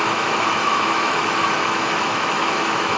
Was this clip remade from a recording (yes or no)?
yes